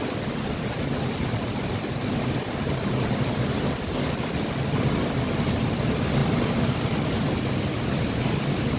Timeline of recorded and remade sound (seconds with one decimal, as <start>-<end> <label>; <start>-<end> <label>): 0.0-6.2 recorded; 6.2-7.1 remade; 7.1-8.8 recorded